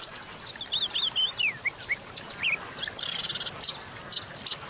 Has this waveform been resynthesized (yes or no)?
no